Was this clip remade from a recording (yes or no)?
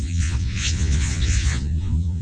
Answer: yes